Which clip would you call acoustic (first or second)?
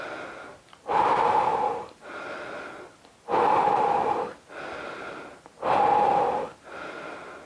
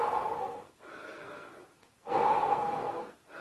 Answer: first